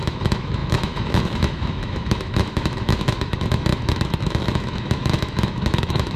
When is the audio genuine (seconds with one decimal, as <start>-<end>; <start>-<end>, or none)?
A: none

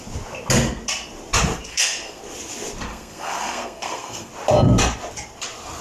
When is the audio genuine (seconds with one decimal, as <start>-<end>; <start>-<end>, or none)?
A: 0.0-1.7; 2.2-2.9; 4.3-5.8

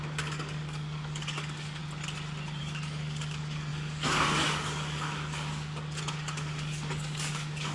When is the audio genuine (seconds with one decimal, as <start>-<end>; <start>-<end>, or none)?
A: 1.8-2.6

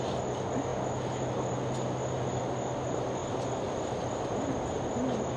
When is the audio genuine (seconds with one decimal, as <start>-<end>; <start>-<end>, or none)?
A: 0.0-3.2; 4.8-5.4

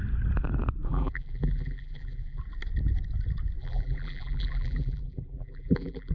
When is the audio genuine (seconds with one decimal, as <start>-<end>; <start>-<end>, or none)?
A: 0.0-0.9; 2.4-3.6

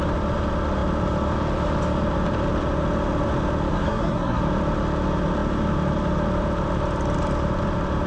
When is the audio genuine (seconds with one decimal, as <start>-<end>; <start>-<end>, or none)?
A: 0.0-3.7; 4.4-8.1

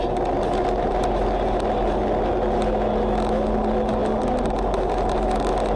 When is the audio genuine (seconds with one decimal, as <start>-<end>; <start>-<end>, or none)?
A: 0.0-5.8

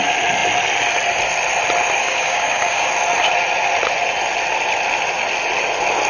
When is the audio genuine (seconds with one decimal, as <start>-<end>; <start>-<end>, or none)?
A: 0.0-2.0; 2.9-6.1